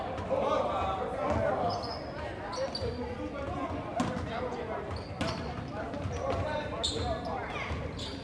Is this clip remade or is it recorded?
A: recorded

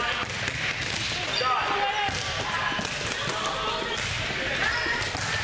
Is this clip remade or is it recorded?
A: recorded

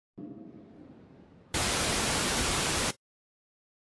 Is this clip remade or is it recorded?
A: remade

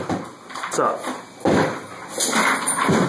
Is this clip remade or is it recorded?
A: recorded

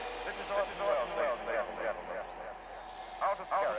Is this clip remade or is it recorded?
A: recorded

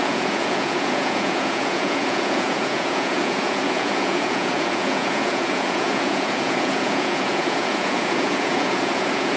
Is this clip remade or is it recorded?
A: remade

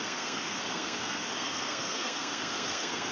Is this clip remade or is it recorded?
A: remade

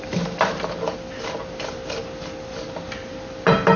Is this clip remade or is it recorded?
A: recorded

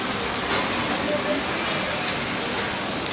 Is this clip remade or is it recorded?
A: recorded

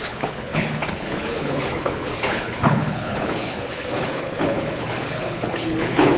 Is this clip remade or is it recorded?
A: remade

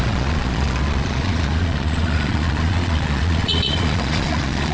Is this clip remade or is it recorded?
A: remade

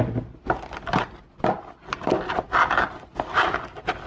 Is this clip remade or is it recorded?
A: recorded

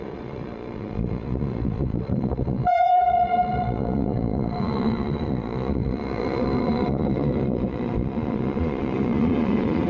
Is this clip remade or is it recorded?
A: remade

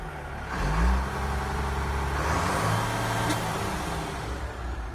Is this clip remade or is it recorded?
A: recorded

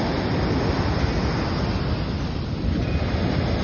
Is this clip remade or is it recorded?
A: recorded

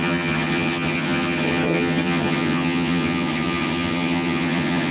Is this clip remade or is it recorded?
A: remade